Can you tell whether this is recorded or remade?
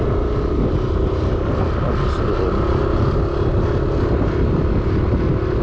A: recorded